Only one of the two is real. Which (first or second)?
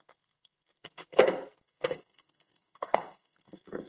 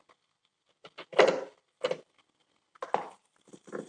second